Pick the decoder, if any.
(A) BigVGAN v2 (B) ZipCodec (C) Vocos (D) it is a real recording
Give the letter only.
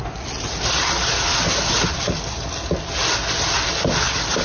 D